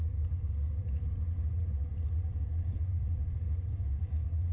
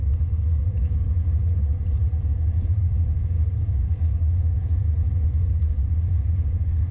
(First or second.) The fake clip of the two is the second